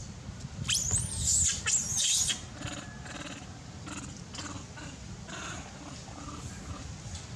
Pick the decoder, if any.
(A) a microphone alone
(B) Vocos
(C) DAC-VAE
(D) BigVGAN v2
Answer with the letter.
A